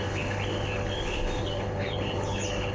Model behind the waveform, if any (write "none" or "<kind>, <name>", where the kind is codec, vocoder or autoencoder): codec, HILCodec